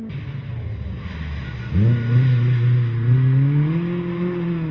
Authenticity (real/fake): real